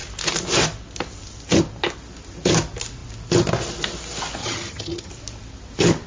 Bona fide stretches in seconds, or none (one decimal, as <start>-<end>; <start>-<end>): 0.0-4.4; 5.1-6.1

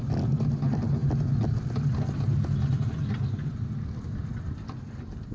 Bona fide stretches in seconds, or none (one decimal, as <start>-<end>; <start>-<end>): 0.0-5.3